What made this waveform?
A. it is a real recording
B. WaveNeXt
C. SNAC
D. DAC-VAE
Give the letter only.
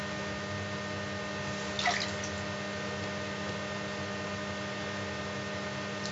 A